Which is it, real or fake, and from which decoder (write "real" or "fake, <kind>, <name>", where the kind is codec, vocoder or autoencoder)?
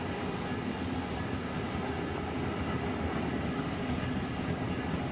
real